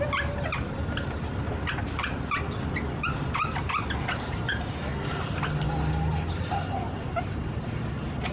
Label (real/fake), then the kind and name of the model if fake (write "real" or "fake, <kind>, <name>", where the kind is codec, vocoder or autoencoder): real